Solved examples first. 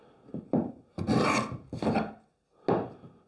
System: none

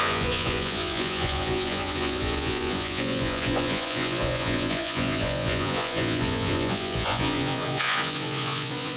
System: vocoder, Vocos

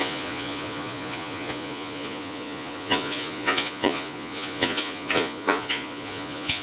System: vocoder, Vocos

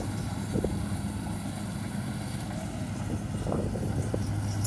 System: none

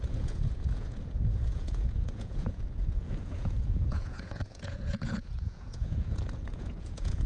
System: vocoder, Vocos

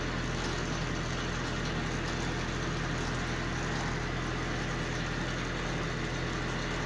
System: none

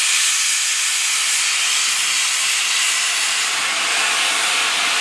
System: none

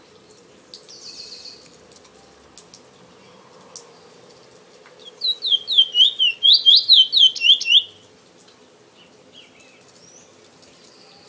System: none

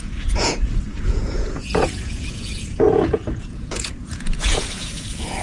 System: vocoder, Vocos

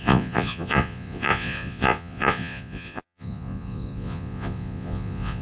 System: vocoder, Vocos